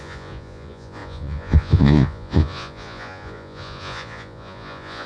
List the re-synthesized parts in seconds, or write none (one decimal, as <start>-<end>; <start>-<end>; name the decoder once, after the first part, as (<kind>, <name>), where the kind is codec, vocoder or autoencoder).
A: 0.0-5.1 (vocoder, Vocos)